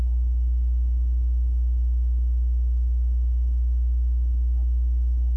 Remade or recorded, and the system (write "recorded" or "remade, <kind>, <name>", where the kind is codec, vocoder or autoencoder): recorded